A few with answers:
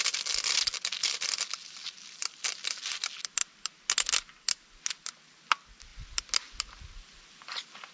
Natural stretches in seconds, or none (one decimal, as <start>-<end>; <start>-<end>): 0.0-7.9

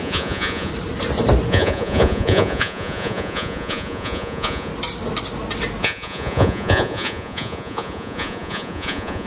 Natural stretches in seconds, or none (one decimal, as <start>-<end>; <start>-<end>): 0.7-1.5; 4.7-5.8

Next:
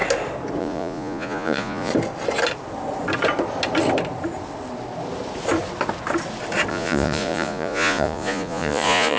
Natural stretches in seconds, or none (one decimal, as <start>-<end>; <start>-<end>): 0.0-0.6; 1.9-6.7

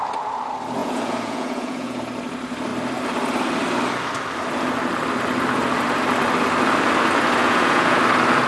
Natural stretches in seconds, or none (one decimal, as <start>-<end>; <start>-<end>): 0.0-0.8; 2.0-7.4; 8.0-8.5